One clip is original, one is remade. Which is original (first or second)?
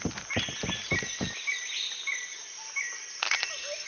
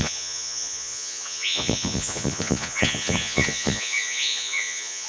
first